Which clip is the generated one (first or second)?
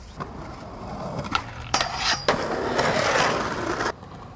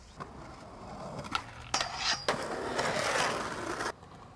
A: first